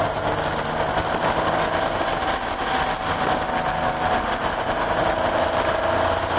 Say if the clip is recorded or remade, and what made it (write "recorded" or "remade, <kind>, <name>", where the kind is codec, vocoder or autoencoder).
recorded